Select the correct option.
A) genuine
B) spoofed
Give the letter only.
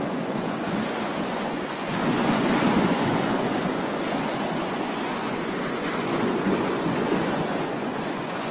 B